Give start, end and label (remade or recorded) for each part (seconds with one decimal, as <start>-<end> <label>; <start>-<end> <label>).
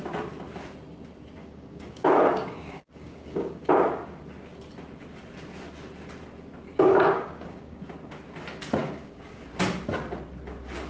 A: 0.0-1.4 recorded; 1.4-3.7 remade; 3.7-6.7 recorded; 6.7-7.8 remade; 7.8-8.8 recorded; 8.8-9.4 remade; 9.4-10.9 recorded